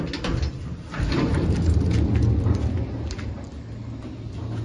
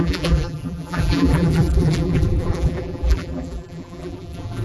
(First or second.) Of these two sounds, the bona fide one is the first